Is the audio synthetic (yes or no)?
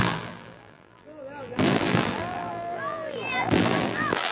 yes